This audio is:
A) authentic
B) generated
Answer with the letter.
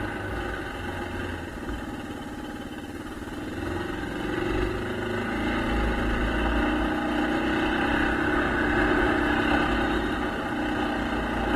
A